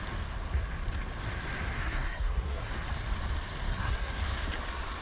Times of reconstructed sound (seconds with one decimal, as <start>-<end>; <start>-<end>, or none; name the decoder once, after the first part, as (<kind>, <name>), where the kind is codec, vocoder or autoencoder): 1.8-2.7 (codec, SNAC); 3.7-4.2